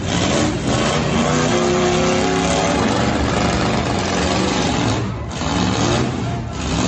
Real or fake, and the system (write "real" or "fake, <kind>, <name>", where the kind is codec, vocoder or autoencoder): real